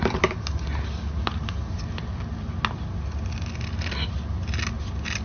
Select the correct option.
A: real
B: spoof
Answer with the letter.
A